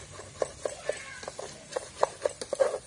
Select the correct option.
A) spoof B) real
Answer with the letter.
B